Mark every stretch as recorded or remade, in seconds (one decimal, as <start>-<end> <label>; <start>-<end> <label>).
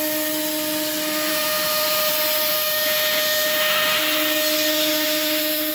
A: 0.0-1.3 recorded; 1.3-2.1 remade; 2.1-2.5 recorded; 2.5-4.0 remade; 4.0-4.7 recorded; 4.7-5.7 remade